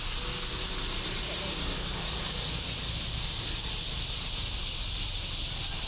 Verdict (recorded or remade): recorded